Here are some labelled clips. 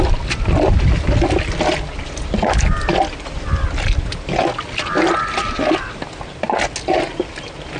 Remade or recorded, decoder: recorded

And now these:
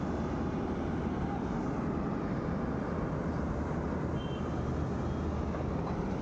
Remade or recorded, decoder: recorded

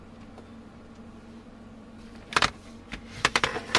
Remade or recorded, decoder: recorded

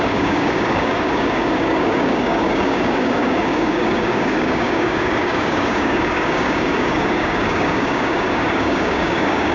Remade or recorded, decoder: remade, codec, DAC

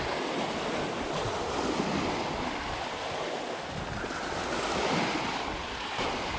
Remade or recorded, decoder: recorded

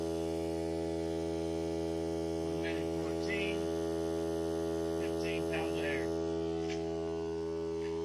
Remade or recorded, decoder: recorded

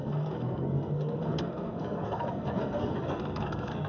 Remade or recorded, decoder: remade, codec, SNAC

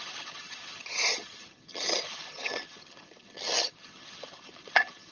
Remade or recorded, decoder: remade, vocoder, HiFi-GAN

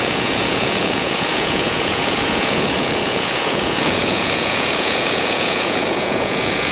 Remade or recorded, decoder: remade, vocoder, Vocos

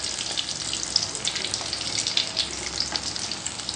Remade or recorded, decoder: recorded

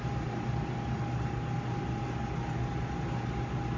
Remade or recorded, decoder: recorded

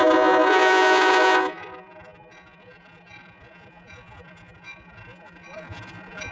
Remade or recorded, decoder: remade, vocoder, Vocos